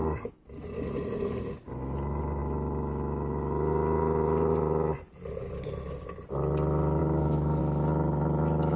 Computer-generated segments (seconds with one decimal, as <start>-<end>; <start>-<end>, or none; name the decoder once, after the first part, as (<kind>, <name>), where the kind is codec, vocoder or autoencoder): 7.0-7.6 (codec, DAC)